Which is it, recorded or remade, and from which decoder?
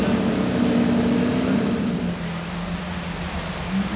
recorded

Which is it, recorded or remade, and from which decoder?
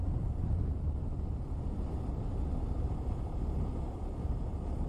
recorded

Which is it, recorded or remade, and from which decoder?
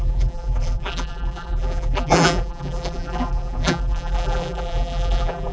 remade, vocoder, BigVGAN v2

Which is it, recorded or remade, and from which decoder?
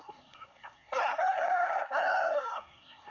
remade, codec, SNAC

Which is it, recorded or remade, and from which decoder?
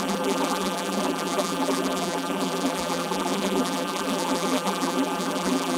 remade, vocoder, BigVGAN v2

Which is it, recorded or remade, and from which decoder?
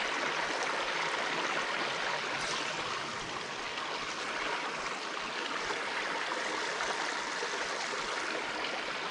recorded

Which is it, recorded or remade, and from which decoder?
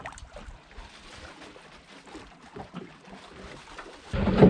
recorded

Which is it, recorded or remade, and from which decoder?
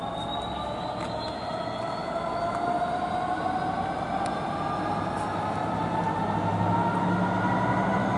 recorded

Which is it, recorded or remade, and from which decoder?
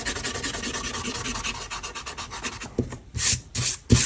recorded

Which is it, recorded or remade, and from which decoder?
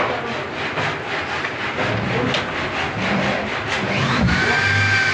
recorded